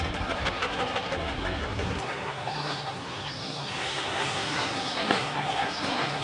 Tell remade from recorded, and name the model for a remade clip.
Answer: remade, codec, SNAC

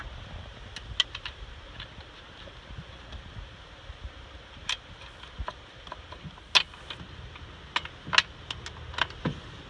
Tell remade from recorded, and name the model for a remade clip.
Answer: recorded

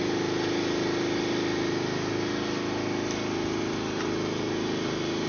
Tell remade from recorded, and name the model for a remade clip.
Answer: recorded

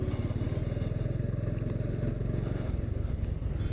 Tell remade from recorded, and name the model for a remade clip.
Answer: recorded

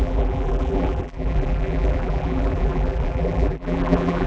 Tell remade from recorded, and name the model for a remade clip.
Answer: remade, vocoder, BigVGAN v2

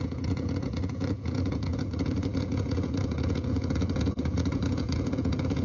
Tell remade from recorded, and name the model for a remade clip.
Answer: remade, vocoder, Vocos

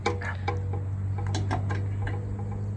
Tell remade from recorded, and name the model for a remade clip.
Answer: recorded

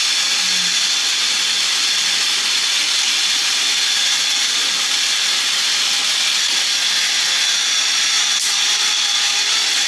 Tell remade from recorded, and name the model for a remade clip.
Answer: recorded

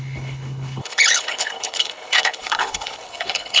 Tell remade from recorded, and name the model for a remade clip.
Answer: remade, codec, HILCodec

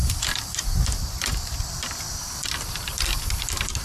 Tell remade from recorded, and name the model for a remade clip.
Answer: remade, vocoder, BigVGAN v2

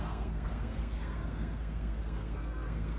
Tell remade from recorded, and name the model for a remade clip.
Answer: remade, codec, SNAC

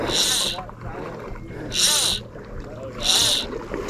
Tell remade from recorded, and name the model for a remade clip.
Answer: recorded